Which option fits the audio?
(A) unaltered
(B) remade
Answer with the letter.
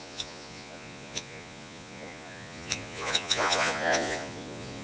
B